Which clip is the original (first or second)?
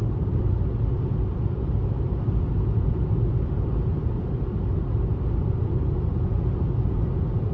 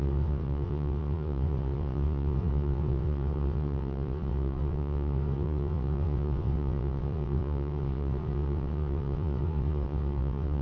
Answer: first